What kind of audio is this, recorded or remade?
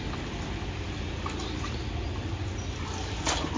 recorded